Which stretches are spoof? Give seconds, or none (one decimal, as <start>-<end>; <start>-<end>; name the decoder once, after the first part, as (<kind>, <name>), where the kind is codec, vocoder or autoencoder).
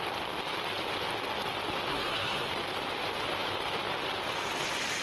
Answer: 1.9-2.5 (codec, SNAC)